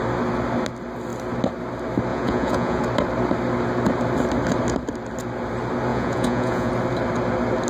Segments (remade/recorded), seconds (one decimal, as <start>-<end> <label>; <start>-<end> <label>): 0.0-2.1 recorded; 2.1-2.8 remade; 2.8-5.9 recorded; 5.9-6.7 remade; 6.7-7.7 recorded